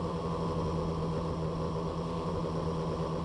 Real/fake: real